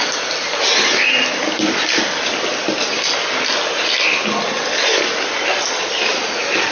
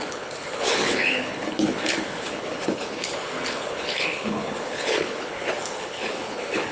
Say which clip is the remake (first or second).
second